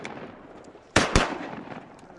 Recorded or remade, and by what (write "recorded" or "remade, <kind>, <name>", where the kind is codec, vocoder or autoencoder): remade, vocoder, BigVGAN v2